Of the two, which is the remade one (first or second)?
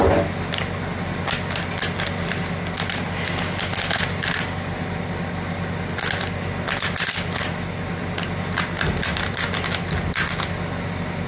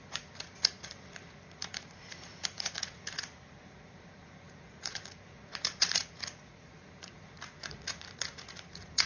second